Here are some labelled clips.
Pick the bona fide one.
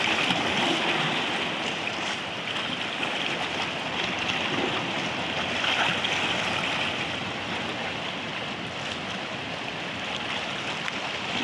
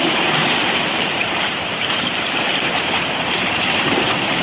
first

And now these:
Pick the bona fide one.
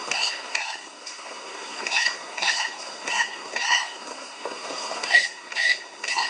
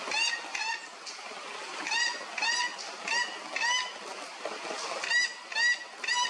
second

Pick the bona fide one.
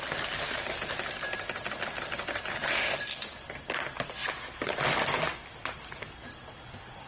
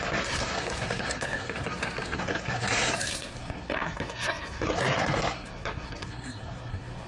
first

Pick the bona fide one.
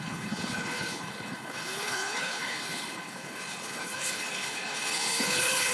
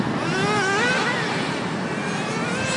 second